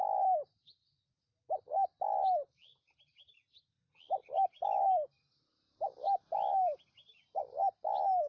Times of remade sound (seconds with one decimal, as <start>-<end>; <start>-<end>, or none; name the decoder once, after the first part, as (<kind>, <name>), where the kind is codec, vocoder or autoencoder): none